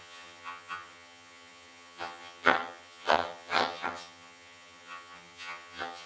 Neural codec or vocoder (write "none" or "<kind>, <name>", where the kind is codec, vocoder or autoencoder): vocoder, HiFi-GAN